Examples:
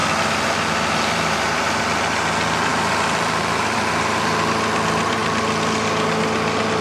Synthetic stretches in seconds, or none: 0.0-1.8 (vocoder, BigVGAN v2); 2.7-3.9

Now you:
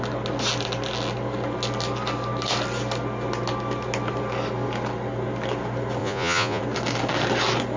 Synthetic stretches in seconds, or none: 6.0-6.6 (vocoder, Vocos)

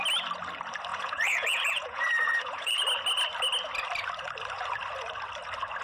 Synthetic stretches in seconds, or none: 0.9-2.8 (vocoder, Vocos)